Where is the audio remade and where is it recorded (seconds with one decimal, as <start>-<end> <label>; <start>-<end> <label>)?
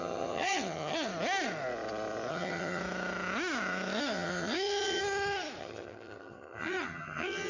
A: 0.0-1.1 remade; 1.1-2.3 recorded; 2.3-2.8 remade; 2.8-4.0 recorded; 4.0-5.0 remade; 5.0-5.6 recorded; 5.6-7.5 remade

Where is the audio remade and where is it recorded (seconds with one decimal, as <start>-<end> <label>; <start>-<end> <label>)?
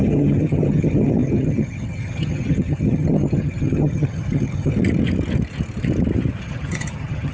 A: 0.0-4.8 remade; 4.8-6.4 recorded; 6.4-7.3 remade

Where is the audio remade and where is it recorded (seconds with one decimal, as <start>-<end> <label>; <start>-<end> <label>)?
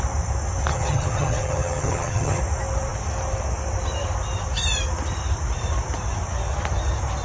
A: 0.0-0.7 recorded; 0.7-2.4 remade; 2.4-7.2 recorded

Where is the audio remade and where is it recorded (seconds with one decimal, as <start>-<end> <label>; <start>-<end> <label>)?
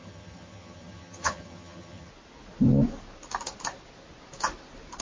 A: 0.0-2.1 remade; 2.1-5.0 recorded